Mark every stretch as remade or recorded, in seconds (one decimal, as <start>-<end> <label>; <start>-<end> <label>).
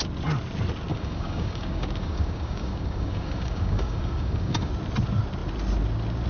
0.0-0.9 recorded; 0.9-4.7 remade; 4.7-6.3 recorded